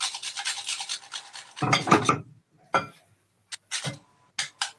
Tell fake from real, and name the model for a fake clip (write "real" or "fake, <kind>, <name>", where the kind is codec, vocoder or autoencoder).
real